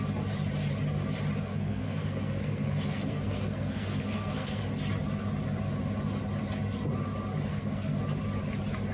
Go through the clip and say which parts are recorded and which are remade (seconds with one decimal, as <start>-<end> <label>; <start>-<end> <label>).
0.0-1.5 recorded; 1.5-4.6 remade; 4.6-7.5 recorded; 7.5-8.0 remade; 8.0-8.9 recorded